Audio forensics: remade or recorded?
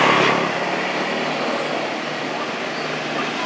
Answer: recorded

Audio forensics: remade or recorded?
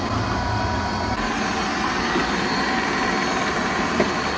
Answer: recorded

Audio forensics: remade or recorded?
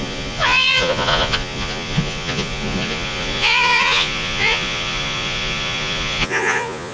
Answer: remade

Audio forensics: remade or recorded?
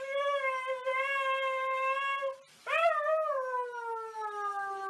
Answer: recorded